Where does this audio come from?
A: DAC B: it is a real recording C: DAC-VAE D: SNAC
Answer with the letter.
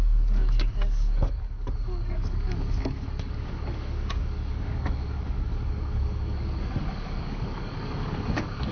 A